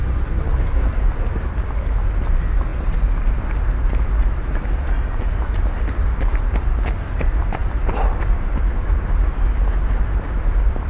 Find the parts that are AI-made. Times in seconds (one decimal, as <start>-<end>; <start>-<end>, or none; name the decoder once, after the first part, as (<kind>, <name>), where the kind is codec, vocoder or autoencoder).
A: none